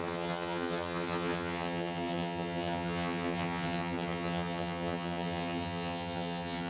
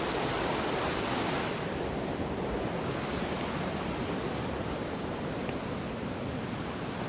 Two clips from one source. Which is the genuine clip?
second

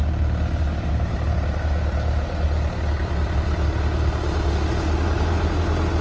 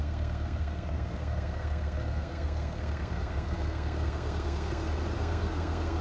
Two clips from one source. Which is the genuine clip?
first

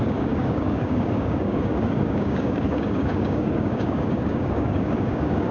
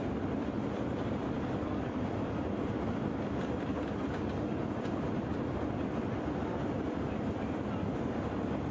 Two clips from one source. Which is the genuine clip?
second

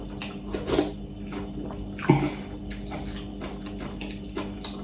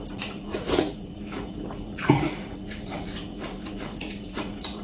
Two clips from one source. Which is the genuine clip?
first